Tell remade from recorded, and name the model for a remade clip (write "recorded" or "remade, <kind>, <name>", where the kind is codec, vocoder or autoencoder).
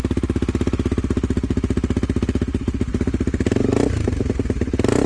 recorded